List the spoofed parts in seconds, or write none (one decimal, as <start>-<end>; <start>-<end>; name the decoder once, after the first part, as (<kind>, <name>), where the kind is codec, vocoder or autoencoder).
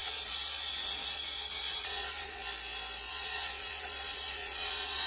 0.0-2.4 (vocoder, Vocos); 3.1-5.1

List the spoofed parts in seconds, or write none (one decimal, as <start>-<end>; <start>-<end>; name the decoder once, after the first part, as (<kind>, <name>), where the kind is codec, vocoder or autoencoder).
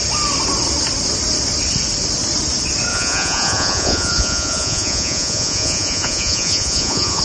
2.9-7.2 (vocoder, Vocos)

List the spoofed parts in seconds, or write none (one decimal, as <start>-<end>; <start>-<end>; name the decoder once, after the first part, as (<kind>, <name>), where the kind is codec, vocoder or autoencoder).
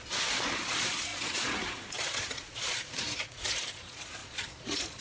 0.0-5.0 (vocoder, Vocos)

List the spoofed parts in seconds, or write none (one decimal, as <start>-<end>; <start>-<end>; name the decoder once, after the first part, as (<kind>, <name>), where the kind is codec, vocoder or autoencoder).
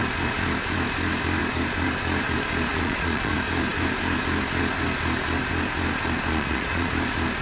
2.7-3.3 (vocoder, Vocos); 6.3-6.9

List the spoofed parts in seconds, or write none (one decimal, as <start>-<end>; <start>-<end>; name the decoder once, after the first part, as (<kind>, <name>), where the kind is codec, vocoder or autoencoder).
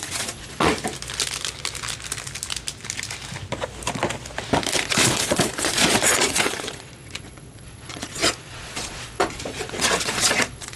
0.0-0.7 (vocoder, Vocos); 4.8-10.8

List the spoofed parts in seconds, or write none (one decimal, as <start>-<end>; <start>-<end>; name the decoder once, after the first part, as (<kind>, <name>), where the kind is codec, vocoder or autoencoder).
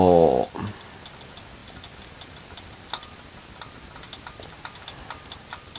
none